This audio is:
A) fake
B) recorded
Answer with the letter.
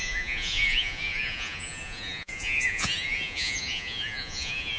A